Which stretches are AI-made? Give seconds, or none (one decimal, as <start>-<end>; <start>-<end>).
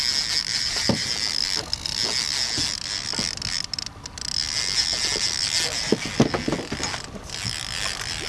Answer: 0.5-1.1